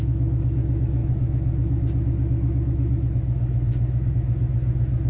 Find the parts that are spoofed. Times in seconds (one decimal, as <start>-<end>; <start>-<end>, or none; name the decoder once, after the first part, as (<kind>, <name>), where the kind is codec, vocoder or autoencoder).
0.0-5.1 (autoencoder, DAC-VAE)